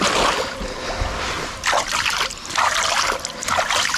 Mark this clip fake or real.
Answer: real